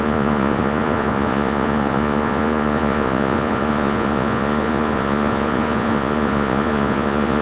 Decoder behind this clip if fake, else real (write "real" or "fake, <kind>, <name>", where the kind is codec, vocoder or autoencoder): fake, vocoder, Vocos